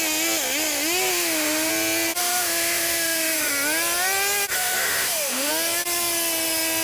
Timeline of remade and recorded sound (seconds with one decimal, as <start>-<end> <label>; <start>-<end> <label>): 0.0-1.1 recorded; 1.1-1.7 remade; 1.7-2.2 recorded; 2.2-3.5 remade; 3.5-4.5 recorded; 4.5-5.5 remade; 5.5-6.8 recorded